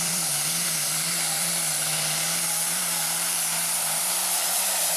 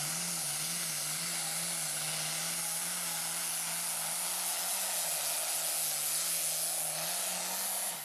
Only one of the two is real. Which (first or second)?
second